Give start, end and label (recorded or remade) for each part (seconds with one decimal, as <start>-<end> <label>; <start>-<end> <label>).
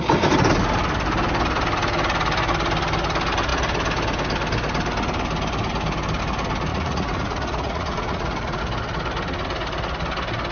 0.0-6.7 recorded; 6.7-8.6 remade; 8.6-10.5 recorded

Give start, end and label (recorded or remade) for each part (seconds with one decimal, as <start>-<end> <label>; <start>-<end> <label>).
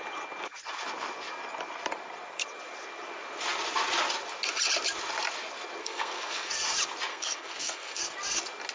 0.0-5.8 recorded; 5.8-6.5 remade; 6.5-7.1 recorded; 7.1-8.0 remade; 8.0-8.7 recorded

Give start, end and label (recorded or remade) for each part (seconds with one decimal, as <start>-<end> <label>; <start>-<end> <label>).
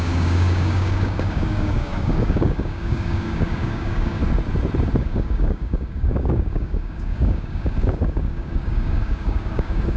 0.0-4.2 remade; 4.2-5.0 recorded; 5.0-10.0 remade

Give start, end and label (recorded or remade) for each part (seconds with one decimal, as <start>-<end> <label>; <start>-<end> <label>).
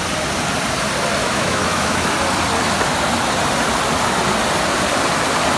0.0-1.2 recorded; 1.2-2.1 remade; 2.1-5.6 recorded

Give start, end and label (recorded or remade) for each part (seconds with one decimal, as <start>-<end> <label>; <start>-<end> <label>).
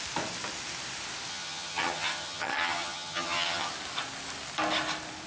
0.0-1.3 recorded; 1.3-3.7 remade; 3.7-5.3 recorded